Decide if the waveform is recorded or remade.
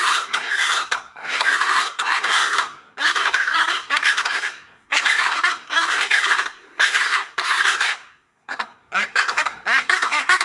remade